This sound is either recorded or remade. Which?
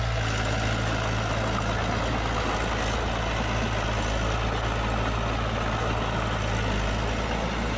recorded